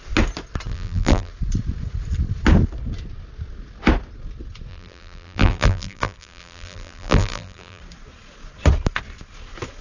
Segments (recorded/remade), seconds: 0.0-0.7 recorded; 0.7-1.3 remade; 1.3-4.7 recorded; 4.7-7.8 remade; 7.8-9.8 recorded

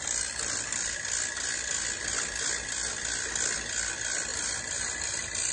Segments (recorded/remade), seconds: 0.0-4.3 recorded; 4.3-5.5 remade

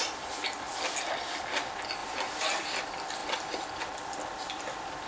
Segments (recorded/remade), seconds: 0.0-2.0 recorded; 2.0-2.5 remade; 2.5-5.1 recorded

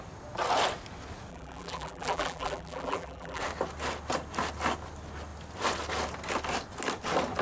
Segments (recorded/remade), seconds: 0.0-1.3 recorded; 1.3-3.4 remade; 3.4-7.4 recorded